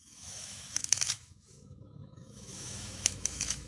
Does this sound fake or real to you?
fake